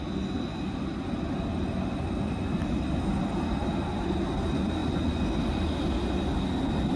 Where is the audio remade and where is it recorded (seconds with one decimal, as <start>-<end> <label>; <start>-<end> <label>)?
0.0-7.0 recorded